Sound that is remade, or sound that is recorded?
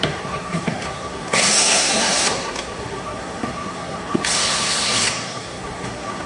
remade